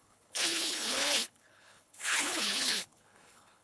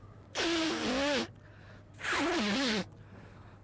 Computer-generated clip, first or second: first